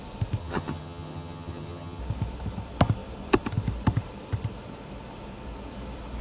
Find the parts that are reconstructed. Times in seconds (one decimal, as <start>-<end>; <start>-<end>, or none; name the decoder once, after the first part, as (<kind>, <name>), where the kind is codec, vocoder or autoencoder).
0.4-2.0 (vocoder, HiFi-GAN)